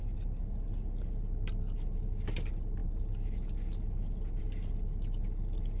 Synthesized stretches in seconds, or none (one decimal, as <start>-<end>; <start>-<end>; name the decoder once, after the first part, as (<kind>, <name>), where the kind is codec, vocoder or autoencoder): none